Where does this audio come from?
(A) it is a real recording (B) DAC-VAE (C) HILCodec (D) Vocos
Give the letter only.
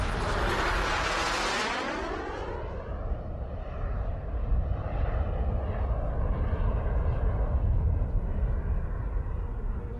A